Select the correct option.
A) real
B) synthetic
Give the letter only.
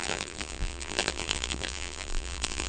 B